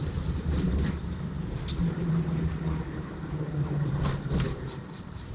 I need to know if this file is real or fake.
fake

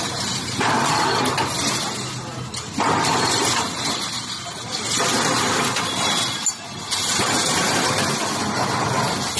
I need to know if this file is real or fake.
real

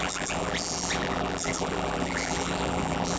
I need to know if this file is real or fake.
fake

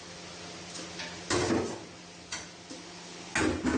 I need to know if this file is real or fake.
real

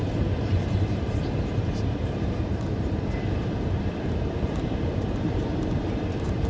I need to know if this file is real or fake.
fake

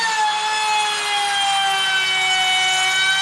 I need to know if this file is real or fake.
real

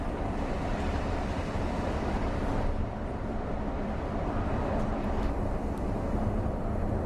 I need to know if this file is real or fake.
fake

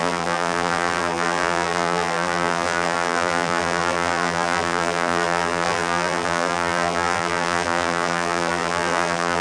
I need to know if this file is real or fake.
fake